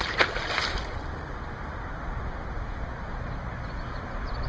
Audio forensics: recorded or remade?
recorded